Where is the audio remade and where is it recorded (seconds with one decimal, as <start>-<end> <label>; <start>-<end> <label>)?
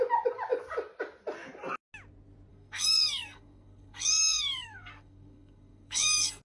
0.0-2.5 recorded; 2.5-6.4 remade